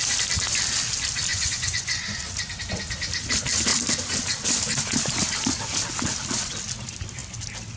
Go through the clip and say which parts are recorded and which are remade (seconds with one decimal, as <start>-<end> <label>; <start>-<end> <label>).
0.0-1.3 recorded; 1.3-2.2 remade; 2.2-7.8 recorded